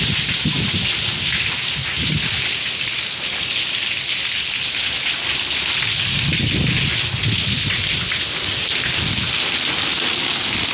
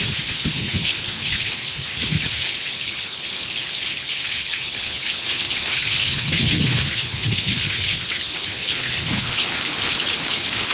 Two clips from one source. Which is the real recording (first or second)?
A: first